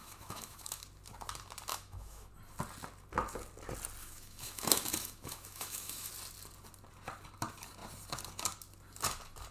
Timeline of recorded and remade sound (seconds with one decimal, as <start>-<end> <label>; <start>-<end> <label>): 0.0-0.8 remade; 0.8-1.7 recorded; 1.7-2.3 remade; 2.3-4.0 recorded; 4.0-6.1 remade; 6.1-9.5 recorded